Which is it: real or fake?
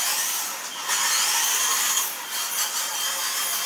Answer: real